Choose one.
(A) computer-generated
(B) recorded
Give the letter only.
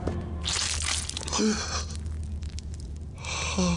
B